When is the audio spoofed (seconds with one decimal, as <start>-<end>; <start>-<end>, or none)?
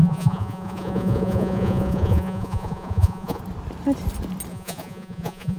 0.0-3.4; 4.5-5.6